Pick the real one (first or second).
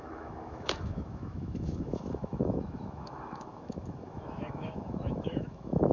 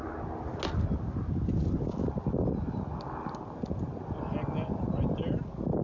second